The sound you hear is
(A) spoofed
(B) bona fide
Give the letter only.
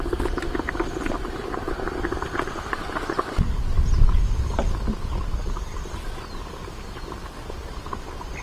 B